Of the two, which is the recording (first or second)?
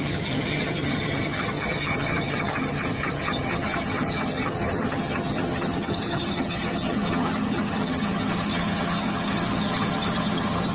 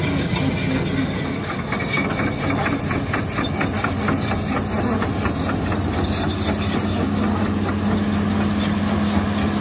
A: second